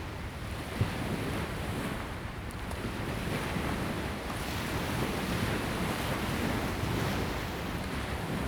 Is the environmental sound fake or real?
real